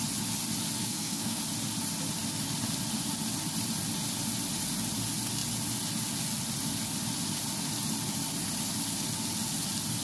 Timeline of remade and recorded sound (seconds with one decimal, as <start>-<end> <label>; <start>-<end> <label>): 0.0-0.8 recorded; 0.8-1.4 remade; 1.4-10.0 recorded